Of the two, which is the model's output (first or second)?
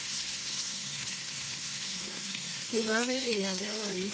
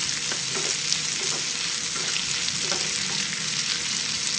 first